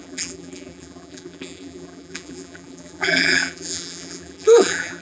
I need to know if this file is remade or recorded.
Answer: remade